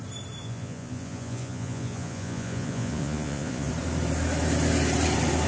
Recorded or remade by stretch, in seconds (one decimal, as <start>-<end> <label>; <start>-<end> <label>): 0.0-0.4 recorded; 0.4-3.7 remade; 3.7-5.5 recorded